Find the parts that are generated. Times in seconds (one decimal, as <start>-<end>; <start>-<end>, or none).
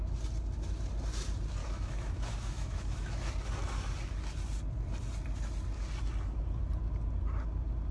1.6-3.3